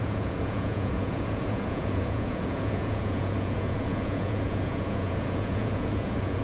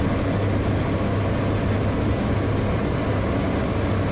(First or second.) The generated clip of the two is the first